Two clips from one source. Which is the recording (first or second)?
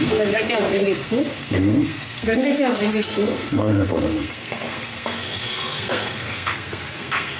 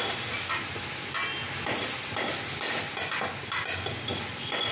second